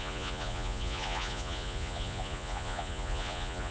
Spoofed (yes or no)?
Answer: yes